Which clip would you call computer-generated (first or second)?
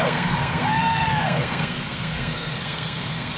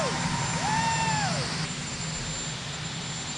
first